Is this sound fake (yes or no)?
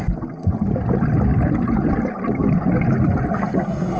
no